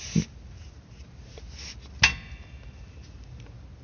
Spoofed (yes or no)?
no